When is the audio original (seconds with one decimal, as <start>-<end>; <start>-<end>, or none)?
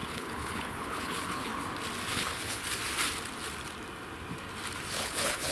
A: 1.5-2.1; 2.6-4.9